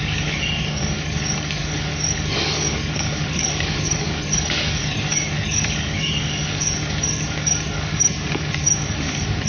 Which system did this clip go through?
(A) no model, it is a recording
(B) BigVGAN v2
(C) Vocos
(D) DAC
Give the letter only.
D